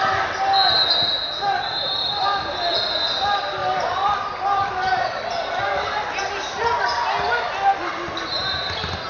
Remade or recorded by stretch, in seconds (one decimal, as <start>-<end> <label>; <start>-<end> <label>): 0.0-3.6 recorded; 3.6-4.7 remade; 4.7-9.1 recorded